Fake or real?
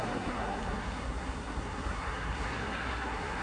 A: fake